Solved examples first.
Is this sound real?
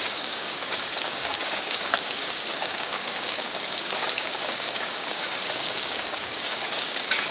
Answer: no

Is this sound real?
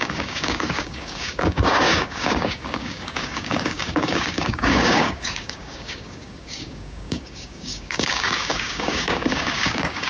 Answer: no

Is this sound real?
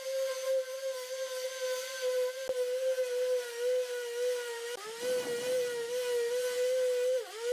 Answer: yes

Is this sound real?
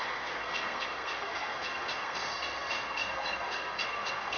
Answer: no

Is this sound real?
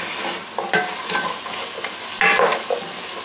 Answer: yes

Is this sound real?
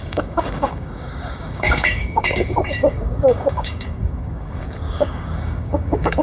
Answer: no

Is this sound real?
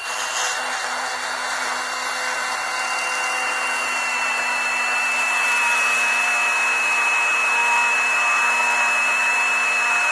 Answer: yes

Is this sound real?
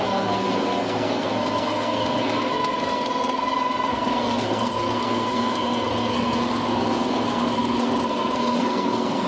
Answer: no